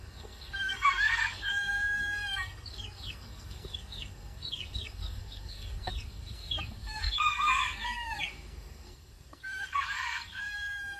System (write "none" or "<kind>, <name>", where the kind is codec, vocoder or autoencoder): codec, SNAC